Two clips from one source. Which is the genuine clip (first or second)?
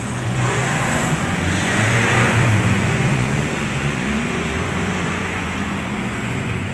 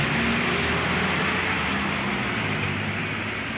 second